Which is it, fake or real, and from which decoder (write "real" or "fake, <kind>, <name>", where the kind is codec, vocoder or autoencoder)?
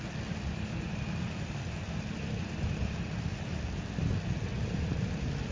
fake, vocoder, BigVGAN v2